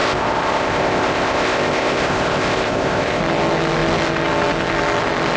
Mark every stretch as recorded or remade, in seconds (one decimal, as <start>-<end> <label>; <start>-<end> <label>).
0.0-3.2 remade; 3.2-5.4 recorded